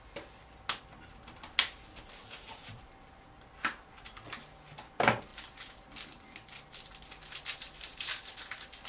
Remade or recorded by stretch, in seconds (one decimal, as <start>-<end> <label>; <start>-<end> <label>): 0.0-2.2 recorded; 2.2-2.8 remade; 2.8-8.9 recorded